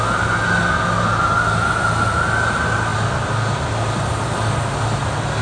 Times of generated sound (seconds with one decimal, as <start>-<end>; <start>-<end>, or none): none